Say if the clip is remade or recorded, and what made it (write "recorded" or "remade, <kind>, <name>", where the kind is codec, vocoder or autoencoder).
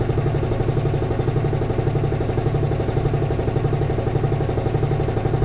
recorded